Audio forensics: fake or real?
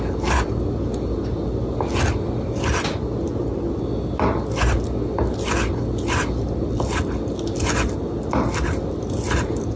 real